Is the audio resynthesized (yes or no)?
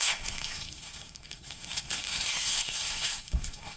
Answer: yes